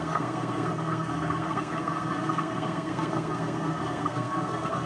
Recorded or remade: remade